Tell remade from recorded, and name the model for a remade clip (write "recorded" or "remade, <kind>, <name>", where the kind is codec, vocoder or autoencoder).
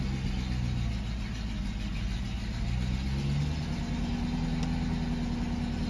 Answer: recorded